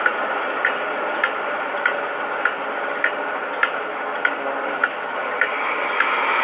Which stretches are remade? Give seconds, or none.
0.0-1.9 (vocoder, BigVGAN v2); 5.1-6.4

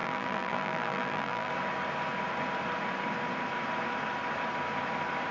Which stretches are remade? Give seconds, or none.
0.0-1.5 (vocoder, BigVGAN v2)

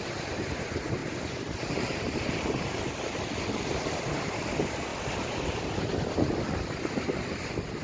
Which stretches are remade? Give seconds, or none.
none